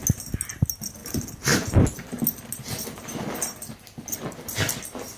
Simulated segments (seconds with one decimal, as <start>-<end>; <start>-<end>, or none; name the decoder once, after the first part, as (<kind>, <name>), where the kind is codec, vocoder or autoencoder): none